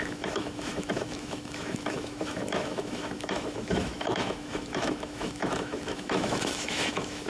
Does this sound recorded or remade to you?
remade